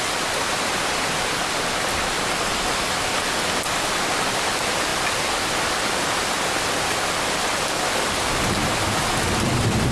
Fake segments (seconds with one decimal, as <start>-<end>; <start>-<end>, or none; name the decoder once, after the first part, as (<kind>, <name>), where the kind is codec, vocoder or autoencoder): 4.9-6.9 (vocoder, BigVGAN v2)